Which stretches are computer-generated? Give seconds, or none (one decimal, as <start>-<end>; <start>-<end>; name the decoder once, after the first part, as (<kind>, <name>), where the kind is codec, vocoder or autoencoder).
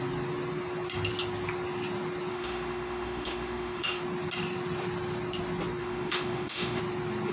2.3-4.0 (autoencoder, DAC-VAE); 5.8-6.8